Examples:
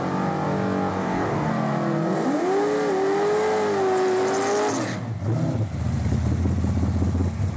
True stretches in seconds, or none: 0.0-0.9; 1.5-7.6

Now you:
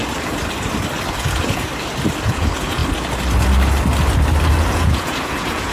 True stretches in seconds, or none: 0.0-1.1; 1.7-2.3; 2.8-4.7

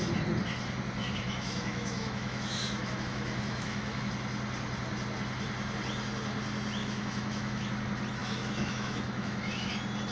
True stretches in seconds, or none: 0.0-1.0; 4.1-6.8; 7.7-8.2; 9.7-10.1

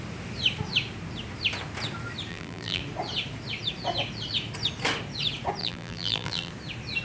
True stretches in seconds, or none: 0.0-2.3; 2.8-5.6; 6.5-7.0

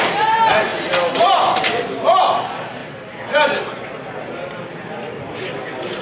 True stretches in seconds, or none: 0.0-6.0

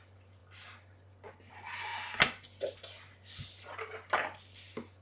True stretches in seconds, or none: 0.0-5.0

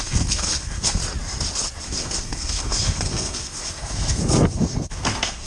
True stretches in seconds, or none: 1.0-1.8